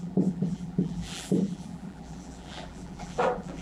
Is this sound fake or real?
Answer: fake